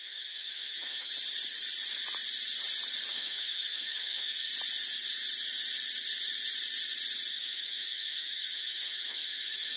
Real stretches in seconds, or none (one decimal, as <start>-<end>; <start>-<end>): 1.1-3.1; 4.5-7.3